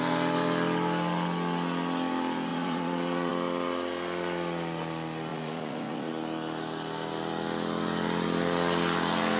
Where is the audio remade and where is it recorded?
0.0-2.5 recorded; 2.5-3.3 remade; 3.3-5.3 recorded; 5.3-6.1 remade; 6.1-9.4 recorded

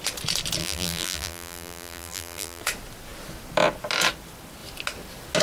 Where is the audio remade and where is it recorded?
0.0-0.6 recorded; 0.6-2.6 remade; 2.6-5.4 recorded

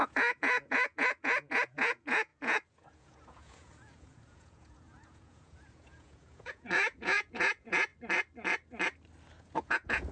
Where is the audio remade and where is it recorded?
0.0-7.9 remade; 7.9-9.4 recorded; 9.4-10.1 remade